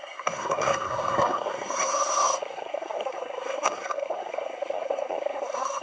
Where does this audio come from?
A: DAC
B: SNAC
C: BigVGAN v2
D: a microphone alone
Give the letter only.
B